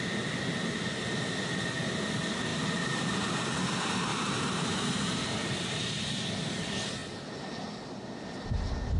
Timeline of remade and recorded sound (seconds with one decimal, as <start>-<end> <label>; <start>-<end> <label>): 0.0-2.5 recorded; 2.5-3.2 remade; 3.2-4.1 recorded; 4.1-6.1 remade; 6.1-9.0 recorded